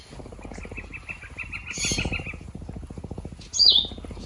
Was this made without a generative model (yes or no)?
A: yes